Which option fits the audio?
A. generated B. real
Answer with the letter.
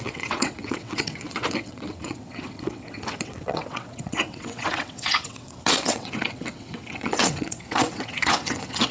A